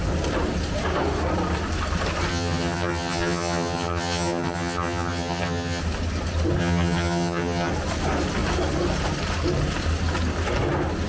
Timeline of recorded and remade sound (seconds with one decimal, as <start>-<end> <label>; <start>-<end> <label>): 0.0-2.3 recorded; 2.3-5.8 remade; 5.8-6.6 recorded; 6.6-7.7 remade; 7.7-11.1 recorded